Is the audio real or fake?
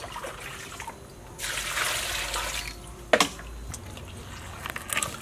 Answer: real